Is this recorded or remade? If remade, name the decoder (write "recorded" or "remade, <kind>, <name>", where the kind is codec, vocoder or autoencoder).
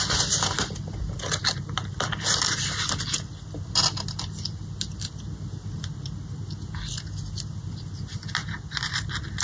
recorded